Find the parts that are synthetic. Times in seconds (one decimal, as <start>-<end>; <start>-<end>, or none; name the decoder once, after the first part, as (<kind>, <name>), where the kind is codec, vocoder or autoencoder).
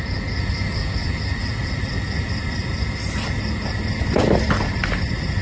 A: 1.0-4.2 (vocoder, BigVGAN v2)